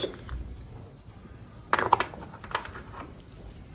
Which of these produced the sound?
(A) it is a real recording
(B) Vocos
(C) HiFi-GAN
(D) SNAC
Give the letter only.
A